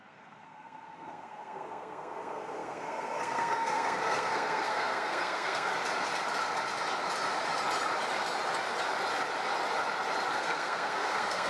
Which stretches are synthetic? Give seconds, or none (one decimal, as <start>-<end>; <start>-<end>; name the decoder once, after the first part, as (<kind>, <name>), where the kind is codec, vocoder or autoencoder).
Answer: 0.0-5.7 (codec, SNAC); 10.3-11.5